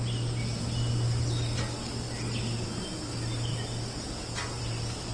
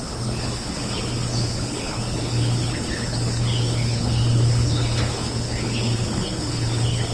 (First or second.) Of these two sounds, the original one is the first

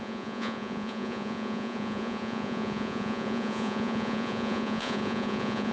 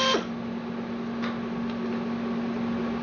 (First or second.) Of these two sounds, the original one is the second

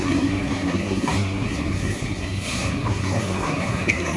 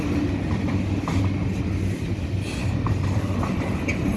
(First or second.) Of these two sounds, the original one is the second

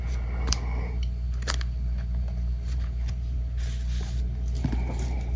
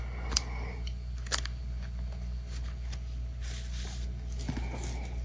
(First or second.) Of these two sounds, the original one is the second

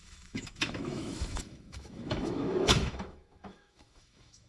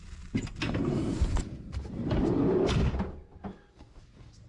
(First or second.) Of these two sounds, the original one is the second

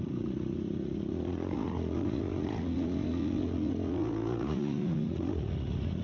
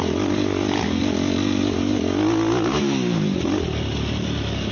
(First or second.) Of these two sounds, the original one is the second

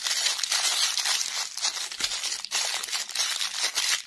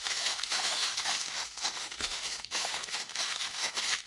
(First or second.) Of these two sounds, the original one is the first